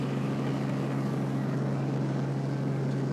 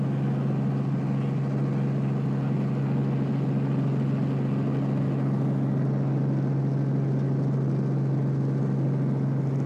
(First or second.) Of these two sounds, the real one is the second